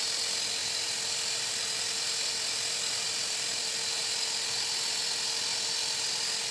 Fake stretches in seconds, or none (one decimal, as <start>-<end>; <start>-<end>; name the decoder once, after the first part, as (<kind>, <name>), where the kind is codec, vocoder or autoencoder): 0.6-4.5 (vocoder, BigVGAN v2)